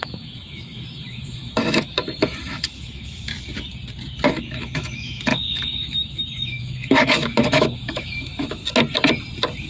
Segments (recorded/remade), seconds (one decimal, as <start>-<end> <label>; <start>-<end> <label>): 0.0-3.3 remade; 3.3-4.3 recorded; 4.3-8.6 remade; 8.6-9.7 recorded